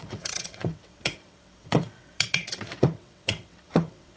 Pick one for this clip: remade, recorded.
remade